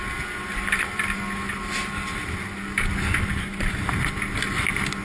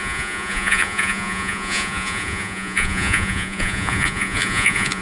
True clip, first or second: first